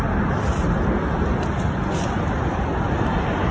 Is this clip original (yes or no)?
yes